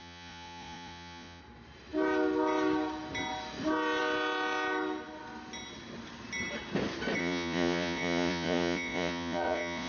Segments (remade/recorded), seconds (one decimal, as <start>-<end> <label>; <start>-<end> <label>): 0.0-1.4 remade; 1.4-7.2 recorded; 7.2-9.9 remade